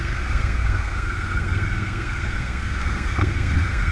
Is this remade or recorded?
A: remade